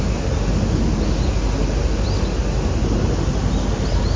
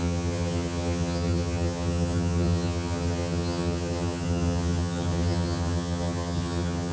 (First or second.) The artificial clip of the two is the second